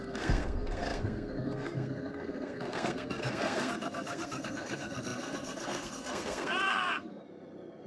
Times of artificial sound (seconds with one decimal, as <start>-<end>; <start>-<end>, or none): 0.0-7.2